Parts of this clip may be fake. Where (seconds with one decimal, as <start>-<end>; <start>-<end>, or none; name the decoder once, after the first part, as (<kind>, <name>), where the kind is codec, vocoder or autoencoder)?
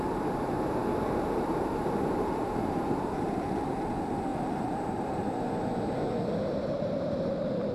4.3-5.5 (vocoder, BigVGAN v2)